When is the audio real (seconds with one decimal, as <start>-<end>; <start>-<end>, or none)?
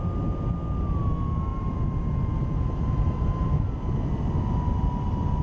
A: 0.0-1.5; 3.6-5.4